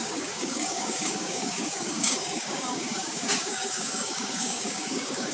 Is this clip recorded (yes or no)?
no